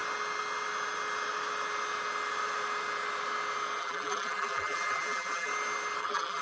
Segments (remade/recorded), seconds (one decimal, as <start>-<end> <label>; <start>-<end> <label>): 0.0-3.8 recorded; 3.8-5.5 remade; 5.5-6.0 recorded; 6.0-6.4 remade